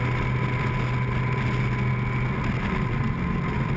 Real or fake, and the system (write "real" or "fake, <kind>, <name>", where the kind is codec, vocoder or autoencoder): real